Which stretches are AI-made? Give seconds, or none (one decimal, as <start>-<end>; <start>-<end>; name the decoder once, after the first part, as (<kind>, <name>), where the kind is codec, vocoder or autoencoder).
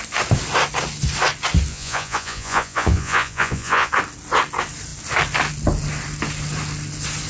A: 1.7-3.9 (vocoder, Vocos)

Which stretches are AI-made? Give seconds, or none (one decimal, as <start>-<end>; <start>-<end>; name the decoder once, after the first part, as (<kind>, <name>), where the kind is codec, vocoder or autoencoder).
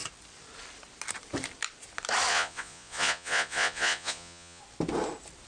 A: 2.3-4.6 (vocoder, Vocos)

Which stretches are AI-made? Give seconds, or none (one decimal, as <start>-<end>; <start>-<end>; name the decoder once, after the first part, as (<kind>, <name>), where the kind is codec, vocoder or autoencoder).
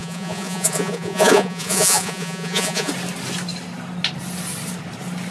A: 0.0-2.9 (vocoder, Vocos)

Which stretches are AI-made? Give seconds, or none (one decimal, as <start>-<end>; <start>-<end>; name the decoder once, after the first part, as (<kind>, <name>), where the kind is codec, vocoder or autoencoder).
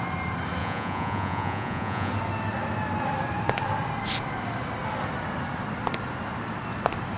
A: 0.6-2.1 (vocoder, Vocos)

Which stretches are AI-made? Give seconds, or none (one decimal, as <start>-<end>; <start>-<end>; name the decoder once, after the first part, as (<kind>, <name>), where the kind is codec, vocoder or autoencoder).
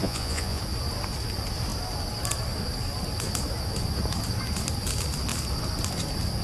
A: 0.0-0.6 (vocoder, Vocos)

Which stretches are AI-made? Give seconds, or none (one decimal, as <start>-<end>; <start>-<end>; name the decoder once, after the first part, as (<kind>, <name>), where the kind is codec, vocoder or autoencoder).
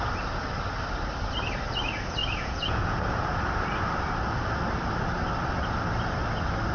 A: 2.2-3.0 (vocoder, Vocos)